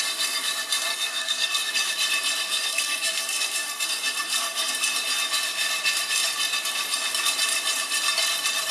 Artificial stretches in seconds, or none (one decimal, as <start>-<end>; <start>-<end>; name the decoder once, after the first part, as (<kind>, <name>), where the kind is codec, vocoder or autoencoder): 0.9-1.7 (codec, SNAC); 2.5-4.7